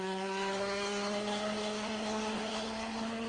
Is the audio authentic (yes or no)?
no